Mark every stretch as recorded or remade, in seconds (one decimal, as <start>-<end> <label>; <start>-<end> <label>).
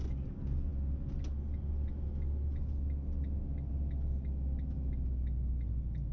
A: 0.0-6.1 recorded